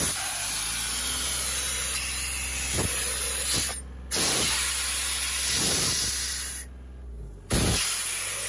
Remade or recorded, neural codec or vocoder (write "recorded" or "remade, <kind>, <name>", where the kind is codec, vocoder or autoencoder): recorded